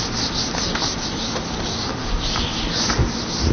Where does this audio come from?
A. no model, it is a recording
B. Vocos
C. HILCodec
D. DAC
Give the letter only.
A